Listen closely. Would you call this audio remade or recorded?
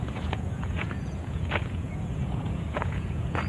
remade